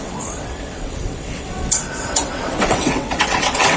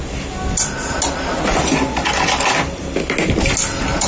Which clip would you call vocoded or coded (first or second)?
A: first